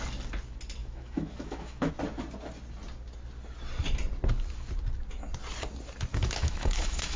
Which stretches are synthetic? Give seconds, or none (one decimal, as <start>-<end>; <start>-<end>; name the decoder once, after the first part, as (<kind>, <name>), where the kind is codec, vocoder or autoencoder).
0.8-1.9 (autoencoder, DAC-VAE); 6.1-7.2